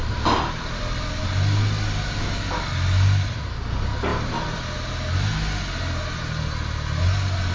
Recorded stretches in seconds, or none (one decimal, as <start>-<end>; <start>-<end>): 0.0-7.5